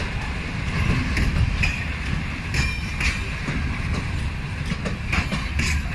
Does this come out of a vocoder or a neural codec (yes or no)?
no